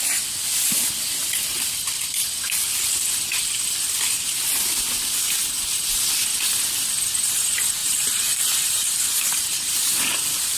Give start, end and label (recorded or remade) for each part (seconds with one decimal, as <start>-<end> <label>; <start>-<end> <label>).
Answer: 0.0-7.8 recorded; 7.8-9.8 remade; 9.8-10.6 recorded